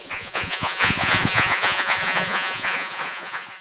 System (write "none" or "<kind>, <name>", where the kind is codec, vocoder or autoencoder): vocoder, Vocos